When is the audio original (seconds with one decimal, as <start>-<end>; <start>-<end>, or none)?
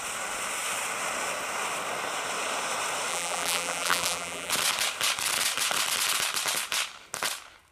0.0-3.1; 4.5-7.7